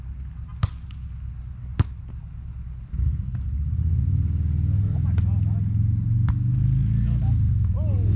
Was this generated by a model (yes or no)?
no